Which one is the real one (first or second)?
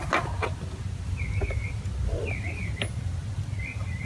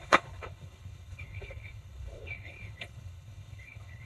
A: first